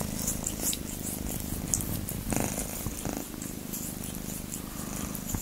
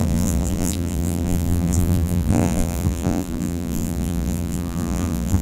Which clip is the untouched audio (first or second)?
first